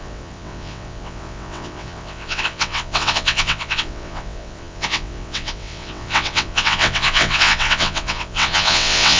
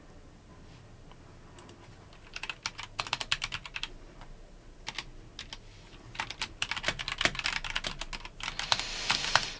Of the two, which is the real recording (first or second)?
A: second